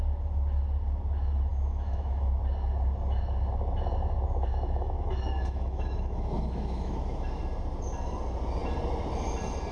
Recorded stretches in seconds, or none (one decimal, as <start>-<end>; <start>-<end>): 0.0-1.5; 2.4-4.5; 7.4-9.7